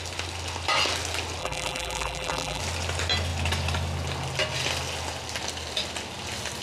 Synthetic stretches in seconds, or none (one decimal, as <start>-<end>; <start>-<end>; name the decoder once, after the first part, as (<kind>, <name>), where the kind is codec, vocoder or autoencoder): 1.4-2.6 (vocoder, BigVGAN v2)